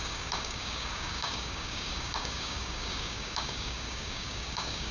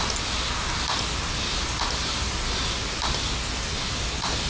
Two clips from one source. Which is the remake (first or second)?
first